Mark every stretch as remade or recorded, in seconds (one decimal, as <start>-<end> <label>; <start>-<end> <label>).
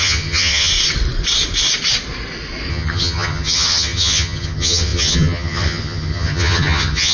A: 0.0-0.7 remade; 0.7-2.7 recorded; 2.7-7.1 remade